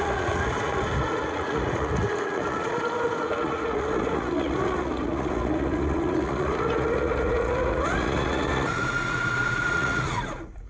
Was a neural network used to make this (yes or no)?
yes